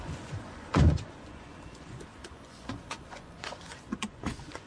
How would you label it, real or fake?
fake